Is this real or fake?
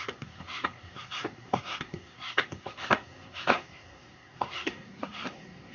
fake